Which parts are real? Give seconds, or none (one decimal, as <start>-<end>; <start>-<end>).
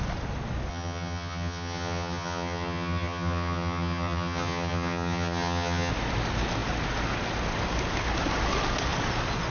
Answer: 0.0-0.7; 5.9-9.5